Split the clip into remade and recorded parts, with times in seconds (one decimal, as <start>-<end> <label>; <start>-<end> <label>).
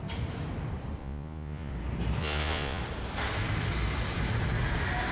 0.0-1.0 recorded; 1.0-1.7 remade; 1.7-2.2 recorded; 2.2-2.8 remade; 2.8-5.1 recorded